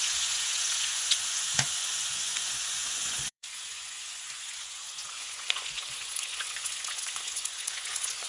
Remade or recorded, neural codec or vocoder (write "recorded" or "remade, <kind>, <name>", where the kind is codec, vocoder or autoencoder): remade, vocoder, Vocos